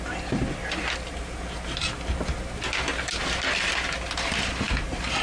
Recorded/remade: recorded